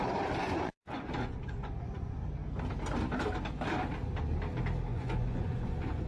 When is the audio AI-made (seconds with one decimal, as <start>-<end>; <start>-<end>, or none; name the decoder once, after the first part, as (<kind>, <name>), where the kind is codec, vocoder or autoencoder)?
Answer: 0.4-2.2 (vocoder, Vocos); 4.9-6.1